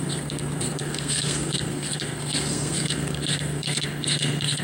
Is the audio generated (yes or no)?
yes